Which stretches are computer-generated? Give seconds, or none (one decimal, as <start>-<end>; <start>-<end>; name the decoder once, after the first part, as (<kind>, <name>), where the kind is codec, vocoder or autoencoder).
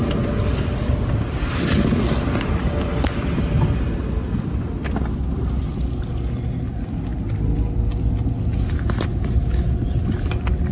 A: none